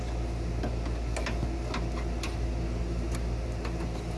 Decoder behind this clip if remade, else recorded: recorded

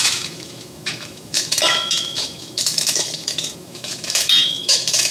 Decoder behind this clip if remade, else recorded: remade, autoencoder, DAC-VAE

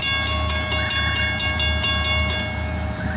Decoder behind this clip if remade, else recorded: recorded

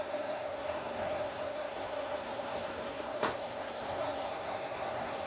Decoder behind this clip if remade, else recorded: remade, codec, SNAC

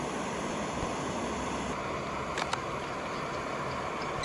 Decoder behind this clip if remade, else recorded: recorded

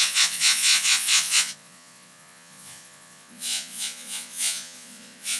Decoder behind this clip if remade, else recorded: remade, vocoder, Vocos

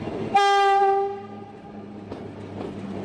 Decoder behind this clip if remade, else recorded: recorded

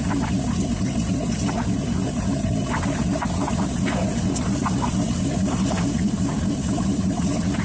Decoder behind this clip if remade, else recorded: remade, vocoder, BigVGAN v2